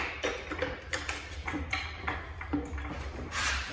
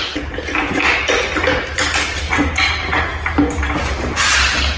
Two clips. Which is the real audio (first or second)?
second